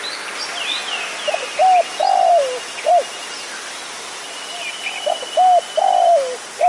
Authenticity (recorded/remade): recorded